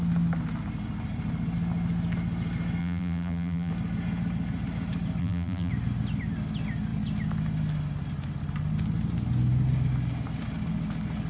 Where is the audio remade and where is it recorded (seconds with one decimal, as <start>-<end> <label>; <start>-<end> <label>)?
0.0-2.8 recorded; 2.8-3.7 remade; 3.7-5.2 recorded; 5.2-5.7 remade; 5.7-11.3 recorded